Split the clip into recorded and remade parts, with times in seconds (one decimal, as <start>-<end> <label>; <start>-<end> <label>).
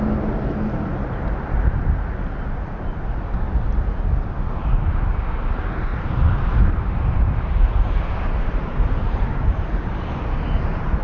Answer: 0.0-5.9 recorded; 5.9-10.1 remade; 10.1-11.0 recorded